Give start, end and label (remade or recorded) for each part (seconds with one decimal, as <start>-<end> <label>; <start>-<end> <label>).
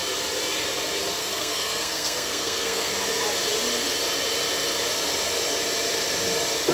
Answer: 0.0-1.2 recorded; 1.2-2.9 remade; 2.9-6.7 recorded